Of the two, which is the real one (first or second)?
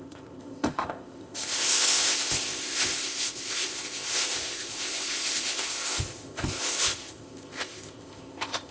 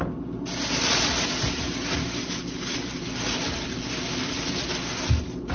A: second